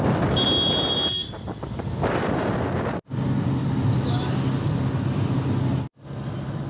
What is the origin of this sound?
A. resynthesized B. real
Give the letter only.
B